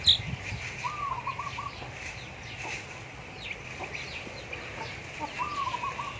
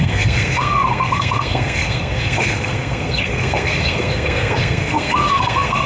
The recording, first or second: first